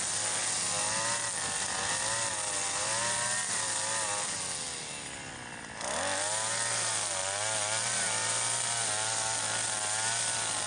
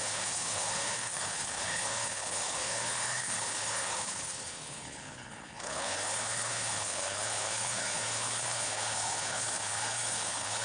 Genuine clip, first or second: first